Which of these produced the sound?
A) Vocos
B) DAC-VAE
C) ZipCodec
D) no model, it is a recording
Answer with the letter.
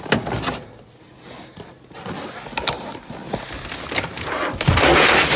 D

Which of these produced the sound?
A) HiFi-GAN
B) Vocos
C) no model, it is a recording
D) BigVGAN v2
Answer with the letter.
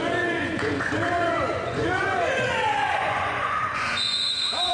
B